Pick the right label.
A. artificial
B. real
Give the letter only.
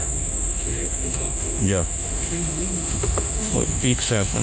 A